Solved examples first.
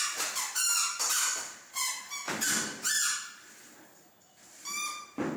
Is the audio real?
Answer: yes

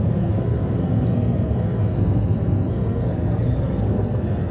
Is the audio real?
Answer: no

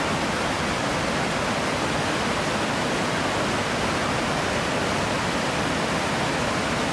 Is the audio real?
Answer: yes